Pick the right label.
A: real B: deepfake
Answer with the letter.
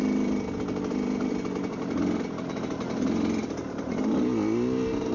A